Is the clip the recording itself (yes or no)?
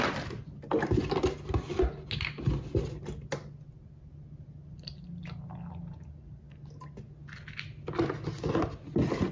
yes